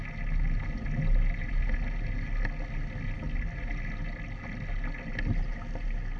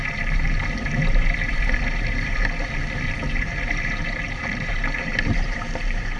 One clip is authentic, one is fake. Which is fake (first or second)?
second